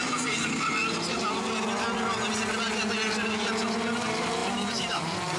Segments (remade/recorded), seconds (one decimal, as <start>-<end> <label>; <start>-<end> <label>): 0.0-4.4 recorded; 4.4-5.4 remade